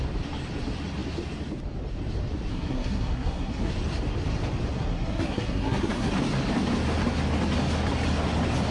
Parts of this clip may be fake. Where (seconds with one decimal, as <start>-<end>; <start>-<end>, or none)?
2.5-3.7; 4.7-6.1